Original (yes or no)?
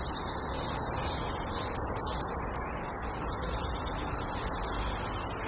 yes